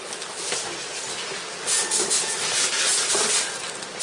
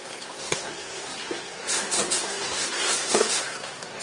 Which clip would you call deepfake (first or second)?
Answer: second